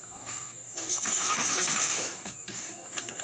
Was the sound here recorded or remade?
remade